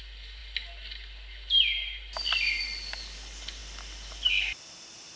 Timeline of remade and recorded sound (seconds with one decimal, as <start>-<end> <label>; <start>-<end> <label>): 0.0-5.2 recorded